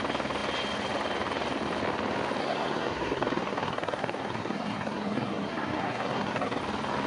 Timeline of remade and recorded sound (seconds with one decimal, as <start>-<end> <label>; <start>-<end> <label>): 0.0-2.4 recorded; 2.4-6.6 remade; 6.6-7.1 recorded